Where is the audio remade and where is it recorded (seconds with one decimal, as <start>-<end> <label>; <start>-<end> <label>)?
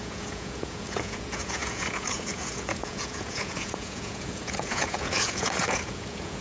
0.0-6.4 remade